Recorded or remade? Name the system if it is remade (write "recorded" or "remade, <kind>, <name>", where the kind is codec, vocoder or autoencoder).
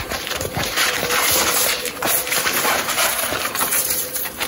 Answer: remade, vocoder, BigVGAN v2